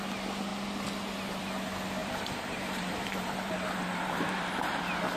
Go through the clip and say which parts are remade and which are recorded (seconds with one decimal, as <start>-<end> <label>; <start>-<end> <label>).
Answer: 0.0-2.0 recorded; 2.0-4.8 remade; 4.8-5.2 recorded